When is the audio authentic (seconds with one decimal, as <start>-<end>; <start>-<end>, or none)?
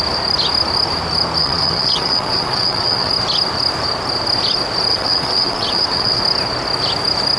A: 0.0-1.4; 3.1-4.9; 6.2-7.4